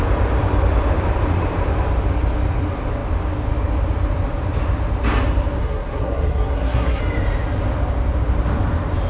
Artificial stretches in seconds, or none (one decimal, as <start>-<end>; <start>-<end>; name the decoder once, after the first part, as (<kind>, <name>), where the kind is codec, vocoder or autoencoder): 5.6-7.0 (codec, SNAC)